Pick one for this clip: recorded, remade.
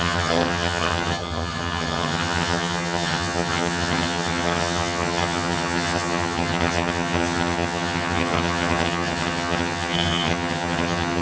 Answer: remade